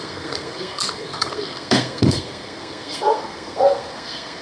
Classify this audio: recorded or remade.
remade